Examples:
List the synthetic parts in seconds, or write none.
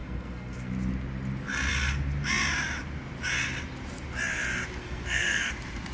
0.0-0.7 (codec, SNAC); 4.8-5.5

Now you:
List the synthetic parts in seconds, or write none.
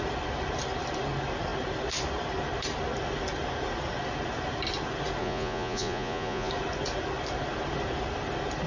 5.2-6.5 (vocoder, Vocos)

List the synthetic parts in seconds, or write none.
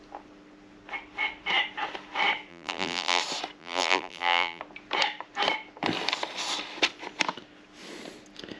2.5-3.2 (vocoder, BigVGAN v2); 3.6-4.6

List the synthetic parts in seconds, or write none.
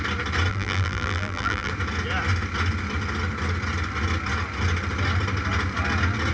0.5-1.7 (vocoder, BigVGAN v2)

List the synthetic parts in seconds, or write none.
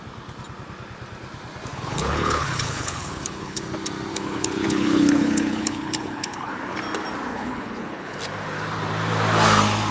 1.7-3.6 (codec, HILCodec); 4.1-6.5; 7.3-8.2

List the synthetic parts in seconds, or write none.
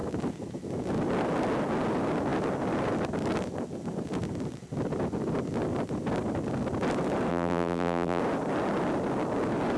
7.3-8.2 (vocoder, BigVGAN v2)